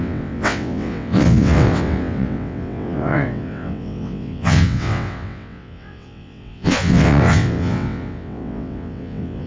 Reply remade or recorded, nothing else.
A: remade